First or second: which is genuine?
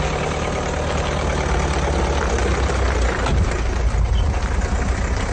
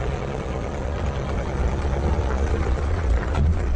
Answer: first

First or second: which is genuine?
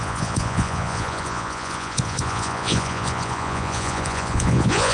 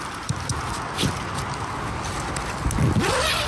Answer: second